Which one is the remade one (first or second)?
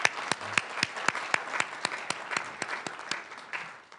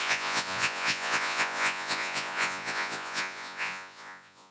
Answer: second